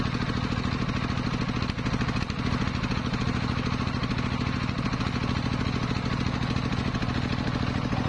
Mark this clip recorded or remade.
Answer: recorded